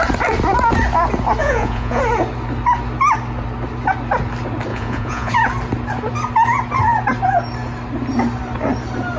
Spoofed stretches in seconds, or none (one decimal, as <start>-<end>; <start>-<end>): 1.4-2.0; 4.7-5.3